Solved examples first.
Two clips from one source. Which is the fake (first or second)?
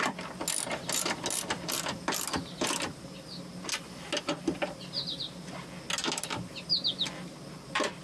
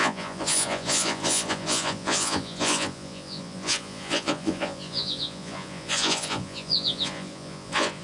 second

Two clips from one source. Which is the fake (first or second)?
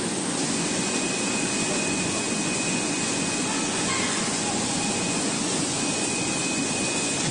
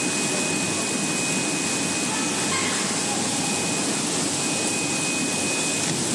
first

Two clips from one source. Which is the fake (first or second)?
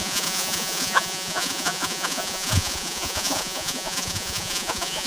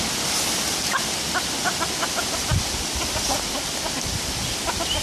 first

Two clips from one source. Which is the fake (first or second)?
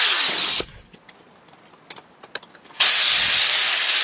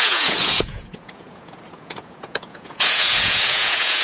second